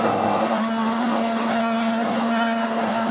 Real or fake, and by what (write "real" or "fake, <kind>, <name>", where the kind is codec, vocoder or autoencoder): fake, codec, SNAC